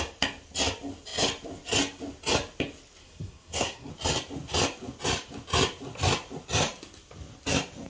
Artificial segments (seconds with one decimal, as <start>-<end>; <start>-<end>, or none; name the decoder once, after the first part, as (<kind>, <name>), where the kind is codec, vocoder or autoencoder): 3.0-3.9 (codec, SNAC)